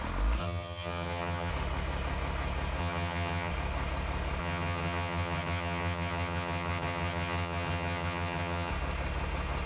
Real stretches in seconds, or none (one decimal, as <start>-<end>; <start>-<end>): 0.0-0.4; 1.5-2.8; 3.5-4.4; 8.7-9.7